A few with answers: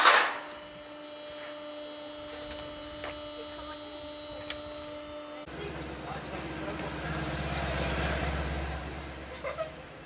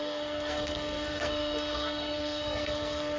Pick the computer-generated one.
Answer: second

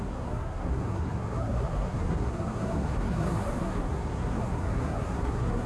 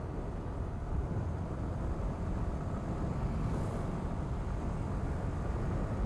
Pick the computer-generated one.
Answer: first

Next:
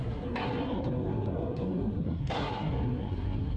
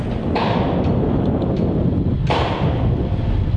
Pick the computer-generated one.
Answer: first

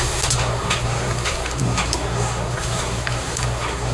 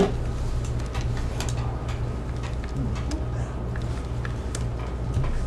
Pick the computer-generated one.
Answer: first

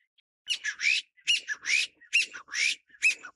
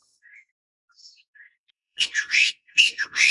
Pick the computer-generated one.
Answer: second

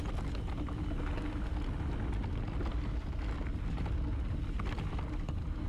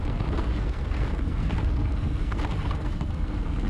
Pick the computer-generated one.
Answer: second